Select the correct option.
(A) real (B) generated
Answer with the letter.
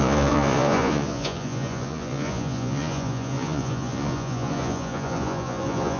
B